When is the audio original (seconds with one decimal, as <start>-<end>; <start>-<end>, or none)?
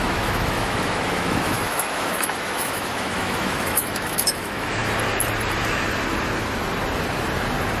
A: 4.8-7.8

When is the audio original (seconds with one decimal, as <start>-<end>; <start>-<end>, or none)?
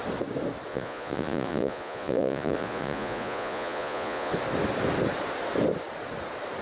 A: 0.0-0.7; 4.3-6.6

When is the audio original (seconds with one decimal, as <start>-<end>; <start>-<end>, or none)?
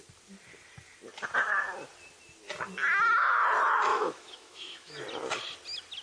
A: 0.0-3.9; 5.0-6.0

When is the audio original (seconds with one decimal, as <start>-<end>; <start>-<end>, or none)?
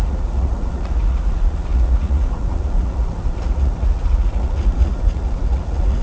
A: none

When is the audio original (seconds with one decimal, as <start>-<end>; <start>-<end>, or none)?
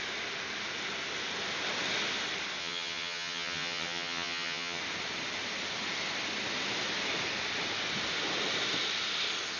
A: 0.0-2.6; 4.8-9.6